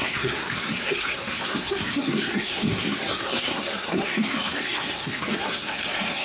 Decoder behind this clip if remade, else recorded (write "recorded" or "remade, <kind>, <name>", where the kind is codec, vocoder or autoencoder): remade, codec, SNAC